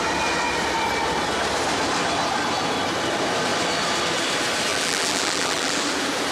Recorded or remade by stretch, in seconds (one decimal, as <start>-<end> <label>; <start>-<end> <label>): 0.0-4.7 recorded; 4.7-5.8 remade; 5.8-6.3 recorded